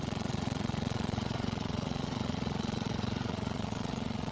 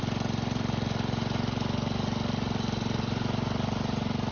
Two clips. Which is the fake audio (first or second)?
first